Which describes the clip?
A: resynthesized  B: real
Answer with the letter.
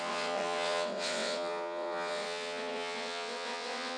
A